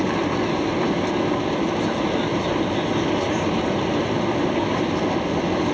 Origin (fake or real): real